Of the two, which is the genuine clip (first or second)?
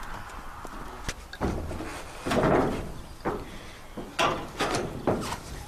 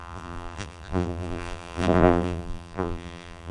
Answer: first